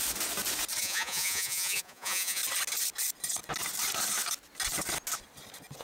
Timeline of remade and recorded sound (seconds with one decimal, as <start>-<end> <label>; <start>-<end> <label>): 0.0-0.8 recorded; 0.8-2.4 remade; 2.4-5.8 recorded